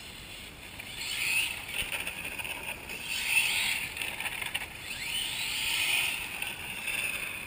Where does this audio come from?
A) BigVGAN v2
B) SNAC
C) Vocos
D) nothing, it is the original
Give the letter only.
A